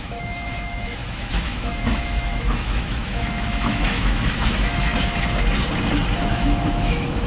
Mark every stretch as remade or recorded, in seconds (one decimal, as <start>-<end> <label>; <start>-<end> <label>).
0.0-4.9 remade; 4.9-6.3 recorded; 6.3-7.3 remade